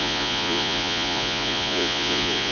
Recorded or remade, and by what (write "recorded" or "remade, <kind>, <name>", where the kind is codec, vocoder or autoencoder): remade, vocoder, Vocos